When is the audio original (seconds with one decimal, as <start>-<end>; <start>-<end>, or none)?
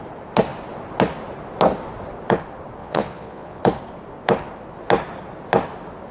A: 0.0-2.8; 3.6-6.1